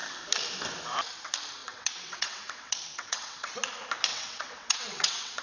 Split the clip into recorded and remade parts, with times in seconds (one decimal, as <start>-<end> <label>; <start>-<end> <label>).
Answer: 0.0-1.6 recorded; 1.6-3.5 remade; 3.5-4.1 recorded; 4.1-5.4 remade